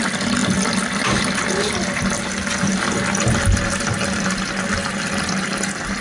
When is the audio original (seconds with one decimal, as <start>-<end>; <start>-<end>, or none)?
0.0-6.0